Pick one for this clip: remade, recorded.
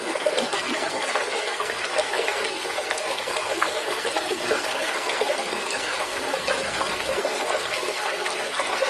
remade